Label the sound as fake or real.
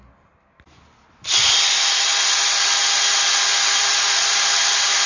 real